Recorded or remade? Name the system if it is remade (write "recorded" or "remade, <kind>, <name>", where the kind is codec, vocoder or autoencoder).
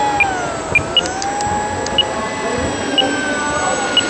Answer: recorded